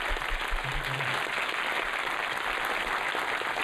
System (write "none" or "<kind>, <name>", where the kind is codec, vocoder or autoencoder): none